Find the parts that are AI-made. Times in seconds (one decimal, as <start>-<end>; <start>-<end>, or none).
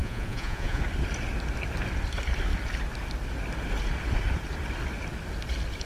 0.0-0.8